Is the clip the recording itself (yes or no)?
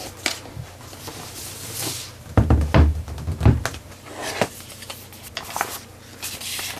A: yes